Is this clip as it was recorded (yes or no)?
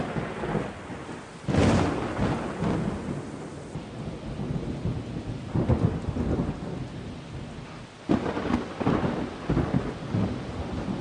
yes